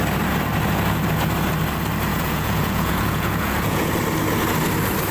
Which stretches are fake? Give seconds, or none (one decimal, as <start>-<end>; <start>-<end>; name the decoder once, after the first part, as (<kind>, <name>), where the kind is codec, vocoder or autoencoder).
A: 2.1-3.9 (vocoder, Vocos)